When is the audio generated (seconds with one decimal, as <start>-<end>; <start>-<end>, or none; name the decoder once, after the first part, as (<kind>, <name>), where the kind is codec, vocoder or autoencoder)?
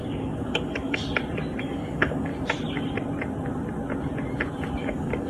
0.0-1.0 (codec, DAC); 1.6-2.3; 4.8-5.3